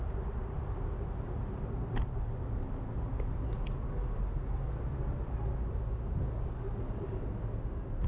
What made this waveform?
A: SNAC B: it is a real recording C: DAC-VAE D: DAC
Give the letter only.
B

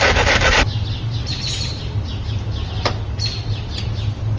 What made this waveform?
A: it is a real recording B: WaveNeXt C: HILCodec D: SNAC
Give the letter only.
A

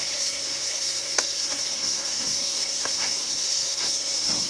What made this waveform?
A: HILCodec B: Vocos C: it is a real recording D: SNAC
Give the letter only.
D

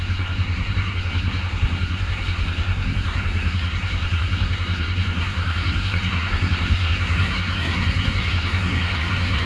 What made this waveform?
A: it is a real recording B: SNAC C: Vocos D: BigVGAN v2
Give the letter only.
B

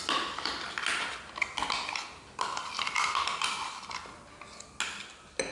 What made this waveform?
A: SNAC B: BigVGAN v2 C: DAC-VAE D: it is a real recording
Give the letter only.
D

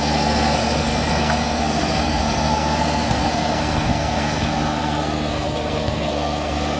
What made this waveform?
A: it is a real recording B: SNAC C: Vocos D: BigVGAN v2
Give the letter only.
B